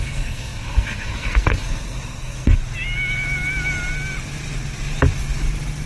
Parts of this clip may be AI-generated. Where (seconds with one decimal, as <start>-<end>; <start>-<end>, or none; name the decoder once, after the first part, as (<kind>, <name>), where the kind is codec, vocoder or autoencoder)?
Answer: 0.0-2.6 (codec, SNAC)